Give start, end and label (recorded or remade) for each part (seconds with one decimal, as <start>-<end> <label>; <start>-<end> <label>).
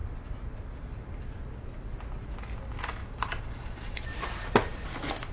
0.0-3.0 recorded; 3.0-4.2 remade; 4.2-5.3 recorded